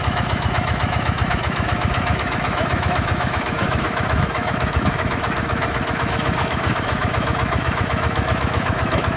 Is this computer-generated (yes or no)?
yes